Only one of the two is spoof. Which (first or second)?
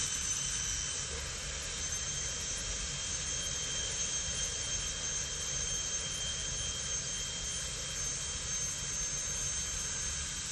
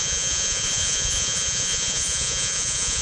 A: second